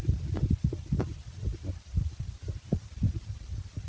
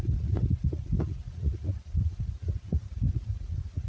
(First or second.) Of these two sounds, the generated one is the second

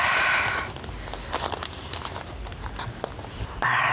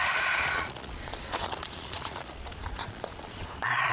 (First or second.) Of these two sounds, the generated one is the second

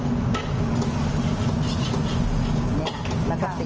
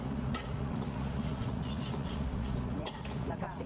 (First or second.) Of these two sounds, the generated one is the second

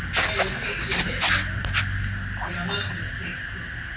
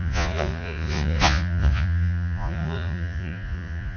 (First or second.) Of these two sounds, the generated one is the second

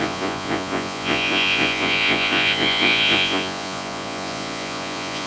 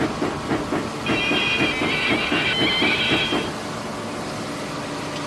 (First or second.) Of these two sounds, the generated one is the first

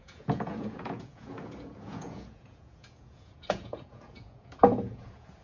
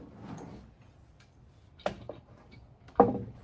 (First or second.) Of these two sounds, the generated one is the first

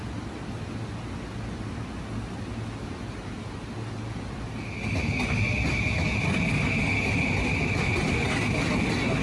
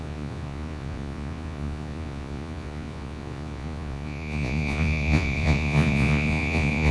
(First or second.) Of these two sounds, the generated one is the second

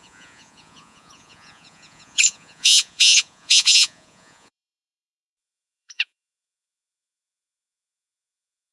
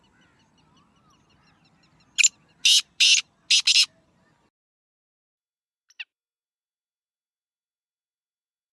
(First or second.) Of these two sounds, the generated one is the first